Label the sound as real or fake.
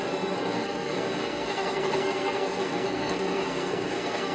fake